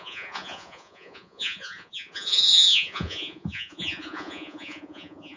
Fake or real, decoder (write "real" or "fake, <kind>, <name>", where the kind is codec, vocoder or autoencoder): fake, vocoder, Vocos